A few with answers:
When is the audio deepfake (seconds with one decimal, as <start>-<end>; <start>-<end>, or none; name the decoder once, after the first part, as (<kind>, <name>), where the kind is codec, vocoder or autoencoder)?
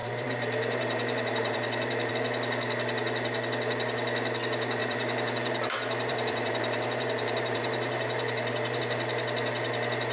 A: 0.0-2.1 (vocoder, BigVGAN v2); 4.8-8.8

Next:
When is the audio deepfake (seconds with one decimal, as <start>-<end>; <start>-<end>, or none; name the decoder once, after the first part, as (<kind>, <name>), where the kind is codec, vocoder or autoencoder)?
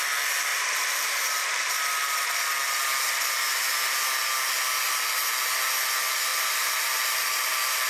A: 0.5-1.8 (vocoder, BigVGAN v2); 6.3-6.9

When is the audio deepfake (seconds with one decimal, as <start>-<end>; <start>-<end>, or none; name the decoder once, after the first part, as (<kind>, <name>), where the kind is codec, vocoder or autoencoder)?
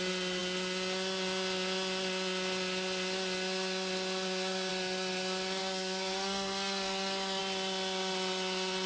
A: 5.6-7.4 (codec, SNAC)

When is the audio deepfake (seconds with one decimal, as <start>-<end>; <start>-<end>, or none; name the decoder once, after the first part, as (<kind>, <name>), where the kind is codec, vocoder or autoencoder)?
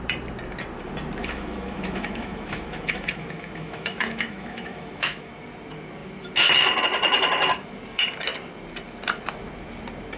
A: 1.2-5.3 (autoencoder, DAC-VAE)